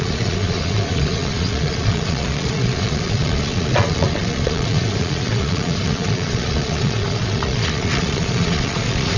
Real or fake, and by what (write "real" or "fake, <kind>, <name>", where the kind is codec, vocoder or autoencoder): fake, vocoder, Vocos